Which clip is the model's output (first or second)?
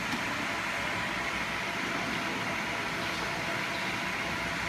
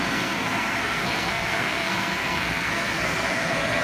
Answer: second